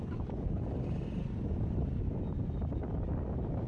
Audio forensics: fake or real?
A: real